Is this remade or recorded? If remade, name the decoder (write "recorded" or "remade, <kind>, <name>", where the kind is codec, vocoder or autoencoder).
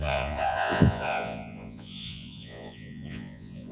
remade, vocoder, Vocos